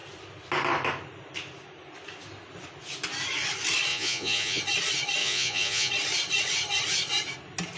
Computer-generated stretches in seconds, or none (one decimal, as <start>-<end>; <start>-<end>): 3.9-4.6; 5.2-5.9